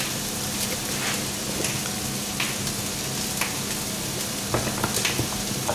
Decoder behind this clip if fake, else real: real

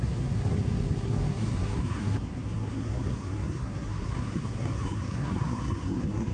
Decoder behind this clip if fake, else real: fake, codec, SNAC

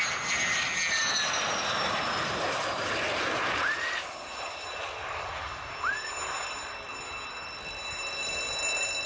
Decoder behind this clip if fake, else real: real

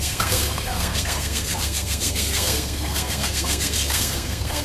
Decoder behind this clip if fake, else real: fake, codec, SNAC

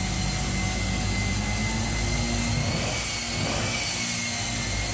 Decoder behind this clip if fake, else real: real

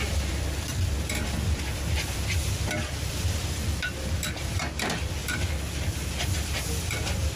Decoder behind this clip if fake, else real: fake, vocoder, BigVGAN v2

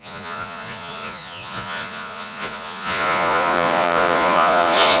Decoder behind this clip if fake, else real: fake, vocoder, Vocos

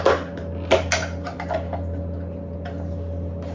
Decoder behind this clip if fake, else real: real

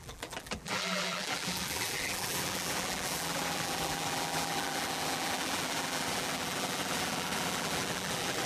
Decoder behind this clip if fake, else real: fake, vocoder, BigVGAN v2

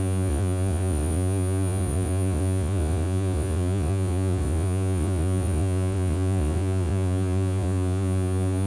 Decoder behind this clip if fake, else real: fake, vocoder, Vocos